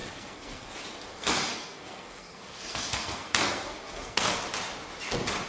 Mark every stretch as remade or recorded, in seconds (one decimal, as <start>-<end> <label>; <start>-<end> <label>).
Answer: 0.0-0.7 remade; 0.7-1.1 recorded; 1.1-4.4 remade; 4.4-5.5 recorded